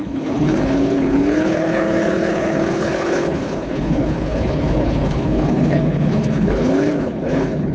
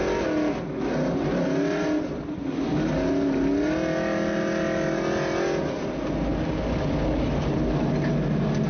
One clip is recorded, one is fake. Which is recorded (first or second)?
second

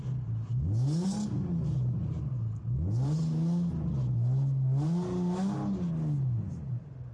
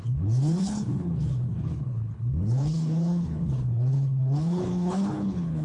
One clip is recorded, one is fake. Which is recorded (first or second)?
first